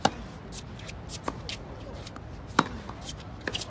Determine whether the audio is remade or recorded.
recorded